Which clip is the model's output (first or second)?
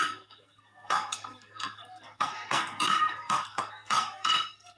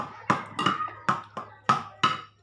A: first